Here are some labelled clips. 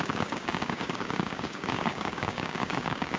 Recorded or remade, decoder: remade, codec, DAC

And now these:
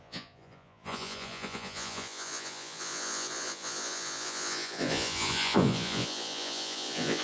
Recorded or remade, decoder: remade, vocoder, Vocos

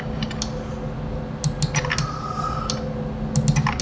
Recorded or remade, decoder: recorded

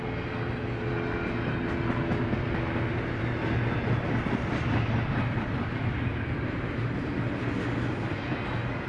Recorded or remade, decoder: recorded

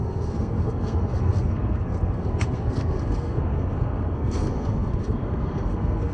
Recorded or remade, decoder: remade, codec, SNAC